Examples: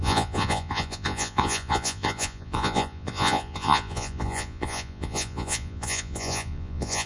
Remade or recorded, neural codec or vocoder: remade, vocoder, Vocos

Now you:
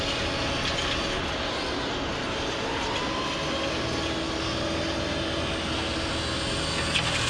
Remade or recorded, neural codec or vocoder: recorded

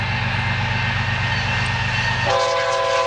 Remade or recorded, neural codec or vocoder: recorded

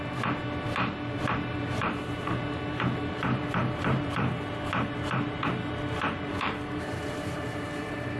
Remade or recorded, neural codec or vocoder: remade, vocoder, BigVGAN v2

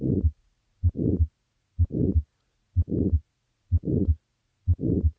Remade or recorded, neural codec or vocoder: remade, vocoder, Vocos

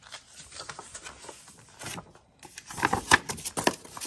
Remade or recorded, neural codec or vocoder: recorded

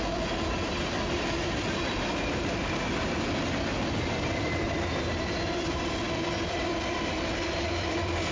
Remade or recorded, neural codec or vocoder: remade, vocoder, BigVGAN v2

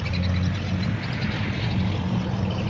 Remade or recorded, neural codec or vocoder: recorded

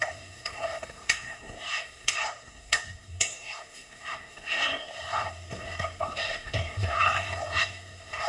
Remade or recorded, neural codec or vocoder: remade, codec, SNAC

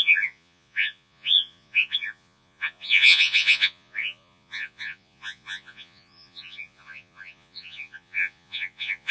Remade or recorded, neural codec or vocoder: remade, vocoder, Vocos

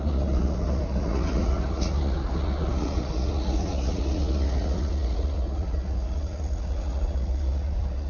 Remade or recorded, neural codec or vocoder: remade, vocoder, Vocos